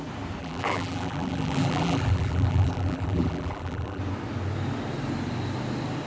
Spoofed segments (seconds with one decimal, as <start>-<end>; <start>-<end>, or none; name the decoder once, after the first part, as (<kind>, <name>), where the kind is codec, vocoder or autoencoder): 0.4-4.0 (vocoder, BigVGAN v2)